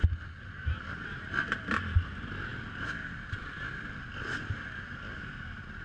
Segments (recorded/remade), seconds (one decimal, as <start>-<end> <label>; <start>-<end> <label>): 0.0-5.8 recorded